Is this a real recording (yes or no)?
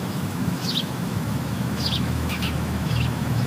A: no